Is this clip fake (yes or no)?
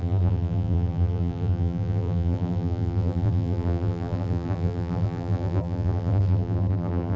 yes